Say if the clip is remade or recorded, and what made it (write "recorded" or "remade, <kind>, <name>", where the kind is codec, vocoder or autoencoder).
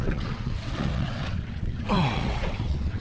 remade, vocoder, WaveNeXt